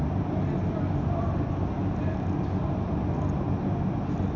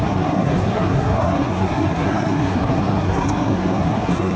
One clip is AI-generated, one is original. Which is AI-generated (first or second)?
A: second